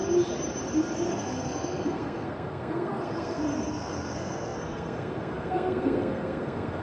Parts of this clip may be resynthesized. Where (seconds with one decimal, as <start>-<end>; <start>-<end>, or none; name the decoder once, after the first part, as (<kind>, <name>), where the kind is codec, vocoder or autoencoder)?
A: 1.1-6.8 (codec, SNAC)